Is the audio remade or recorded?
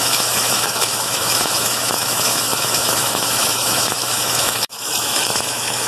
remade